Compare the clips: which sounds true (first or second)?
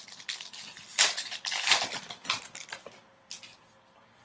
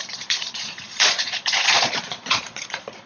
first